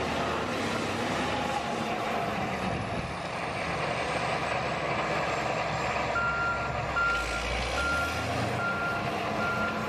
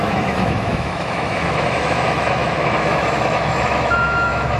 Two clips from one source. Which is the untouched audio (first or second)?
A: first